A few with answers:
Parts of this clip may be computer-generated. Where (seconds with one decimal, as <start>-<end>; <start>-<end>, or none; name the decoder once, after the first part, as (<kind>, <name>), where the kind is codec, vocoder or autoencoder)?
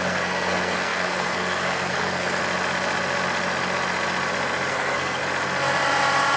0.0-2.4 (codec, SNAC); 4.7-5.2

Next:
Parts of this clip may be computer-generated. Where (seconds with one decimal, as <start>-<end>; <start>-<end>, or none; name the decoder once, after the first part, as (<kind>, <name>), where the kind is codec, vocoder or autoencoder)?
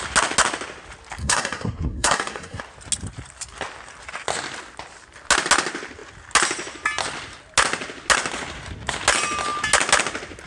1.2-2.6 (codec, SNAC)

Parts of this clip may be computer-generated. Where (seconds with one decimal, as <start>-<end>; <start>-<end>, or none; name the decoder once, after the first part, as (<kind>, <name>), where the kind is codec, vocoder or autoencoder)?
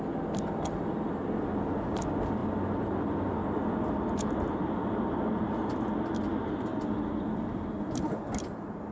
none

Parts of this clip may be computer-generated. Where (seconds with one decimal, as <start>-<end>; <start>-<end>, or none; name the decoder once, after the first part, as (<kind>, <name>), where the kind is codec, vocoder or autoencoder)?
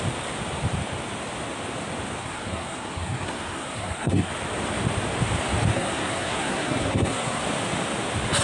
2.2-4.3 (codec, SNAC); 5.7-7.4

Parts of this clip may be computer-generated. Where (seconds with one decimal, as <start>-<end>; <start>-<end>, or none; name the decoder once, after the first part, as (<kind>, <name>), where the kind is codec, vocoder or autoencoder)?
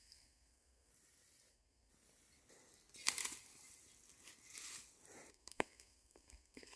0.0-0.9 (codec, SNAC); 1.5-1.9; 5.3-6.8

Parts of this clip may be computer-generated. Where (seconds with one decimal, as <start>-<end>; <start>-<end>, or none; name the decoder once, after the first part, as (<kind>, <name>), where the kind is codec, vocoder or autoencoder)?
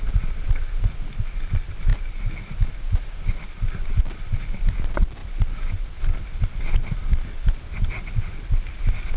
none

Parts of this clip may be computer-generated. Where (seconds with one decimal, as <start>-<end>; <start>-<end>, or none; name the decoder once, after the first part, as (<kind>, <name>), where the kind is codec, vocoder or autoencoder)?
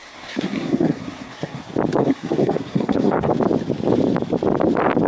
0.0-1.6 (codec, SNAC); 2.0-3.3